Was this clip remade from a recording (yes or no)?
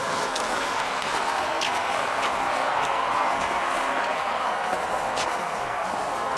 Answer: yes